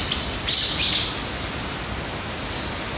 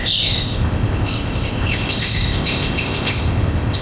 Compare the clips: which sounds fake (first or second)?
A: second